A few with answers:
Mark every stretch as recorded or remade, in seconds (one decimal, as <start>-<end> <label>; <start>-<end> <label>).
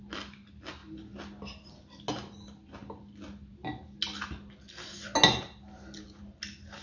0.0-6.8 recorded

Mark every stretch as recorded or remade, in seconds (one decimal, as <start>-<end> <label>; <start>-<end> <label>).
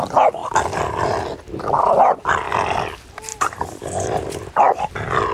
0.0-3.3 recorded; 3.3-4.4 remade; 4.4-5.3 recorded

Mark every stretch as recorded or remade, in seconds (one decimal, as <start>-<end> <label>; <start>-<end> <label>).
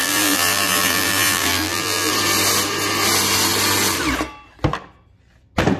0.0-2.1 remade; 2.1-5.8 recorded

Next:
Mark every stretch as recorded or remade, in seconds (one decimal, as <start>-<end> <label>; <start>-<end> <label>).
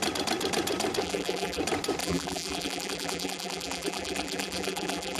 0.0-1.0 recorded; 1.0-1.6 remade; 1.6-2.0 recorded; 2.0-5.2 remade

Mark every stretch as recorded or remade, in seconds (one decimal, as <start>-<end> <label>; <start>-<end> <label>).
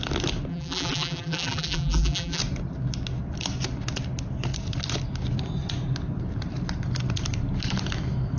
0.0-0.5 recorded; 0.5-2.4 remade; 2.4-8.4 recorded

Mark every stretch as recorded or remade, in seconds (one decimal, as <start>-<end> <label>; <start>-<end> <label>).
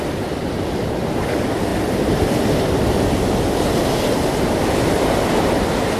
0.0-0.4 recorded; 0.4-1.1 remade; 1.1-6.0 recorded